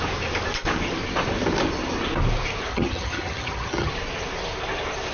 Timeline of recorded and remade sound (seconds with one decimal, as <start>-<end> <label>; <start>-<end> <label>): 0.0-2.7 recorded; 2.7-3.9 remade; 3.9-5.1 recorded